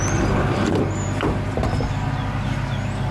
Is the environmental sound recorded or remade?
remade